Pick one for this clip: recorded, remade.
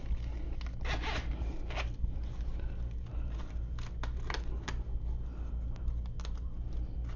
recorded